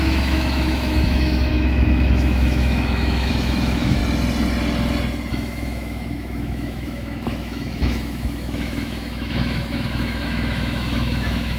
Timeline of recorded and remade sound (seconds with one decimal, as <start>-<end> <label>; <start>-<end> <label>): 0.0-4.0 remade; 4.0-5.3 recorded; 5.3-11.6 remade